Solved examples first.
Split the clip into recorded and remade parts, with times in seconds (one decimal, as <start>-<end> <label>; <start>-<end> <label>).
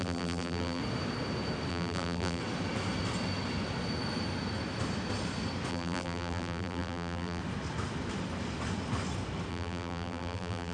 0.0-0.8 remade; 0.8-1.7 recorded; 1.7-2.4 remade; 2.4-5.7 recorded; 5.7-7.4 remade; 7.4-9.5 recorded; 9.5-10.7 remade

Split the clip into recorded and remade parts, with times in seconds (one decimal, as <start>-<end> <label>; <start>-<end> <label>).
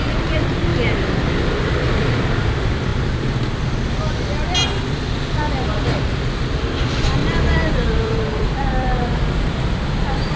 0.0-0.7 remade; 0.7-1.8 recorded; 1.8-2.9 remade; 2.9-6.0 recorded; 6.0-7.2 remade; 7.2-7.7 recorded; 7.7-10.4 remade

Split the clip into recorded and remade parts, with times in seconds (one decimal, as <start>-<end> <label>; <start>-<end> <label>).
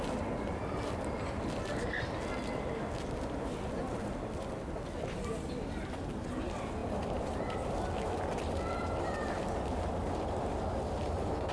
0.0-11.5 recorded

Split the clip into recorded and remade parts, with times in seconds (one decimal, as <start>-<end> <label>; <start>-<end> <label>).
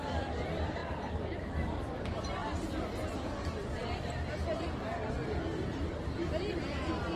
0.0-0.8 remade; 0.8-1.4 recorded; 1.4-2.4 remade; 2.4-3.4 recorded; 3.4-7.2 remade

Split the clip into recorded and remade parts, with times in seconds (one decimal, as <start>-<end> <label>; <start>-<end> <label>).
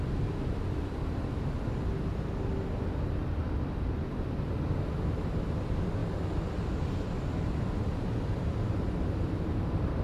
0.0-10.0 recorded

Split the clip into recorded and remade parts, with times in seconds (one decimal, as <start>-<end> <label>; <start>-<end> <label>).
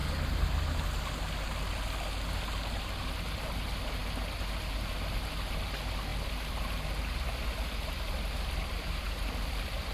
0.0-9.9 recorded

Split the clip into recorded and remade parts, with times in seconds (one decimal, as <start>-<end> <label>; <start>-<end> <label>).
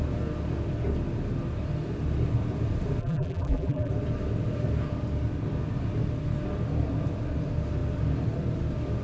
0.0-3.0 recorded; 3.0-3.9 remade; 3.9-9.0 recorded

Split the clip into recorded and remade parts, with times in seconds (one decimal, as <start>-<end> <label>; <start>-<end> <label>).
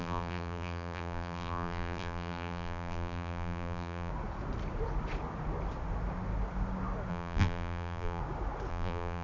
0.0-4.1 remade; 4.1-7.1 recorded; 7.1-8.2 remade; 8.2-8.7 recorded; 8.7-9.2 remade